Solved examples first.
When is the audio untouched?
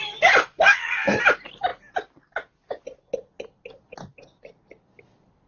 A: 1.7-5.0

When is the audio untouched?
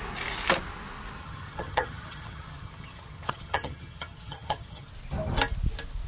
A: 0.0-1.2; 4.9-6.1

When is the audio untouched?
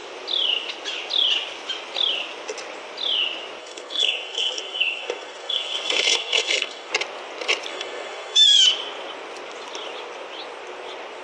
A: 0.0-3.6; 6.9-7.7; 8.6-11.2